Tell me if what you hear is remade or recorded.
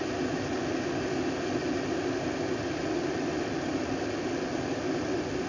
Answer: recorded